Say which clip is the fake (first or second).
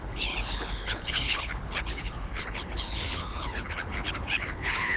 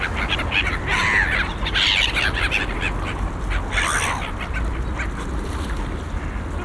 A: first